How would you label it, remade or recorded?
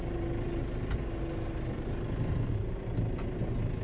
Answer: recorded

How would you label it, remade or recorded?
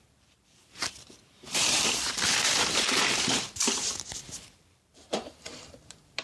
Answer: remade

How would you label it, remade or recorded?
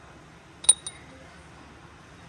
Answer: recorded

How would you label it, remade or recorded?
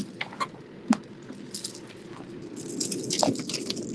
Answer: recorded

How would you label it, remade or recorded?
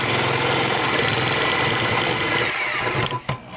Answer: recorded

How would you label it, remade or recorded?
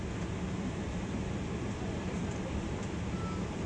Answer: recorded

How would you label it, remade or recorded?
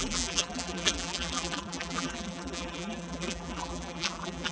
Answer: remade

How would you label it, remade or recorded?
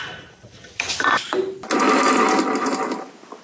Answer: recorded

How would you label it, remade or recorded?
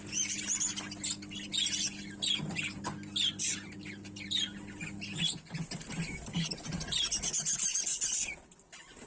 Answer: recorded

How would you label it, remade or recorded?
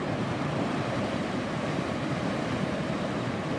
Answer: remade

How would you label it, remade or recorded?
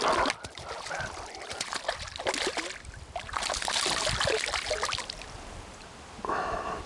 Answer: recorded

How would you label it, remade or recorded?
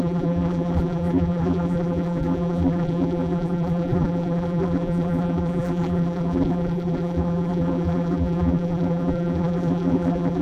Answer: remade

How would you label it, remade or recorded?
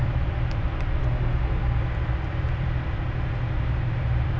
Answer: remade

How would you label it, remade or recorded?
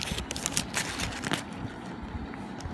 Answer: recorded